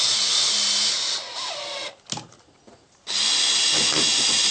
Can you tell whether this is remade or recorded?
recorded